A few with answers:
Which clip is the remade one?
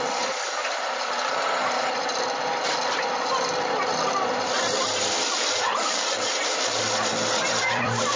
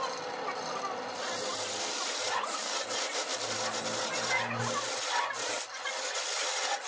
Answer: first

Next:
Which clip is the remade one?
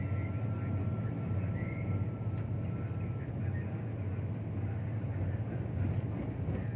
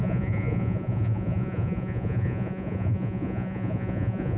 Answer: second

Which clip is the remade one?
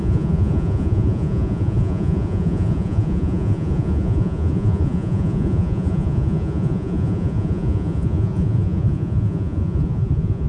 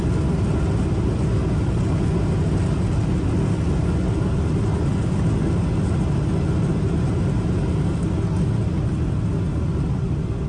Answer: first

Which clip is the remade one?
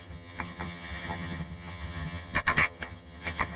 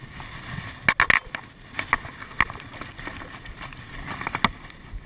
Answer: first